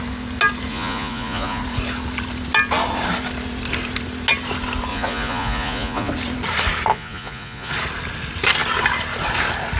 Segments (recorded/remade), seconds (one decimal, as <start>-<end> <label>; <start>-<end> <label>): 0.0-0.7 recorded; 0.7-1.6 remade; 1.6-4.9 recorded; 4.9-6.1 remade; 6.1-6.9 recorded; 6.9-7.7 remade; 7.7-9.8 recorded